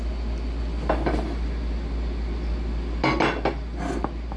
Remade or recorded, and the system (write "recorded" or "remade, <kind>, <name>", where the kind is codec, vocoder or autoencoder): recorded